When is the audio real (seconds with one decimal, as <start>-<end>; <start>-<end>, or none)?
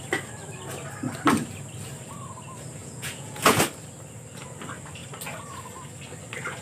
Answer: 0.0-2.8; 3.6-6.6